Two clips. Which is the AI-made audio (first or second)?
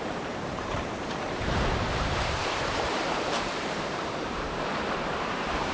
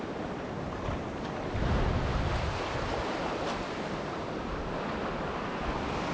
first